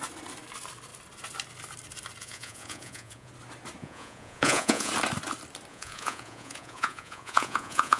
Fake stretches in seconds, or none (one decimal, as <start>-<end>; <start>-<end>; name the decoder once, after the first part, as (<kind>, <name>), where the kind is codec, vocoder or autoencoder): 2.2-3.3 (vocoder, Vocos); 3.8-4.9; 5.7-8.0